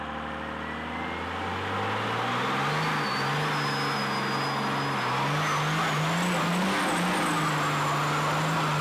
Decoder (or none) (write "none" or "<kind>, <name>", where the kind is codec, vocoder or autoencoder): none